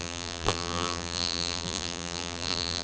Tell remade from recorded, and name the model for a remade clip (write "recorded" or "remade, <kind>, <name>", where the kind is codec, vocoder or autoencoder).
remade, vocoder, BigVGAN v2